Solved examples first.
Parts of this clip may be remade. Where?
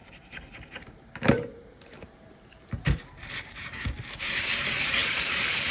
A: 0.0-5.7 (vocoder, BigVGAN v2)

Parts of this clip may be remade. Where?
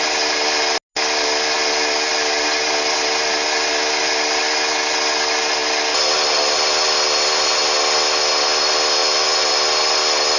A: none